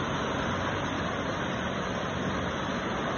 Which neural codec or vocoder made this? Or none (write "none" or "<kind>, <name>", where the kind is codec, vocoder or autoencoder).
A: vocoder, BigVGAN v2